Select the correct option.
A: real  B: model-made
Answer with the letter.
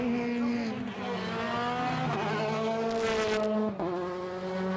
A